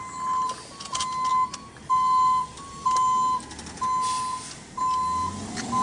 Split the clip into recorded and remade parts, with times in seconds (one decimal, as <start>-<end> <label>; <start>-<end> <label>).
0.0-5.8 recorded